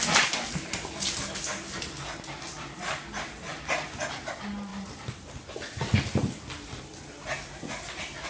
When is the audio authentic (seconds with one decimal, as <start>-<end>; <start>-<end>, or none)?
0.0-8.3